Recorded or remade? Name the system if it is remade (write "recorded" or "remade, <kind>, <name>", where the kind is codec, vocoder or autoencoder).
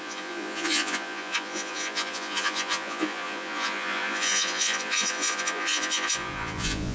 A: remade, vocoder, Vocos